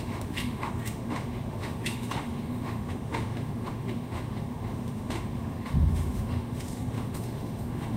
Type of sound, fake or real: fake